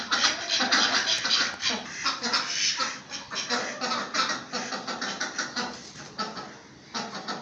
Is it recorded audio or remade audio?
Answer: remade